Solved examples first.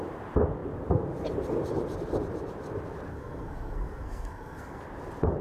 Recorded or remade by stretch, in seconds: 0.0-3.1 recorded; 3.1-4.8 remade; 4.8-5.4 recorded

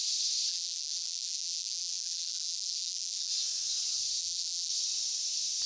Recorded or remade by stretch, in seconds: 0.0-0.5 recorded; 0.5-3.3 remade; 3.3-4.2 recorded; 4.2-4.7 remade; 4.7-5.7 recorded

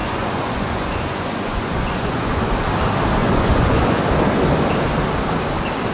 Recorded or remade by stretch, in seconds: 0.0-2.5 remade; 2.5-3.2 recorded; 3.2-4.0 remade; 4.0-5.9 recorded